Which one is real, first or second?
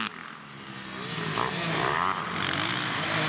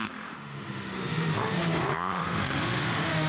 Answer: first